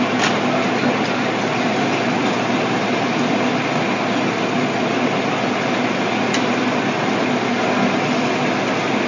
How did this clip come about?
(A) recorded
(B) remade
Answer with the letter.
A